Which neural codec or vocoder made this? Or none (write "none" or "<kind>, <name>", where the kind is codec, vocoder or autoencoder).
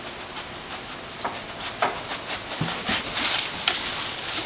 none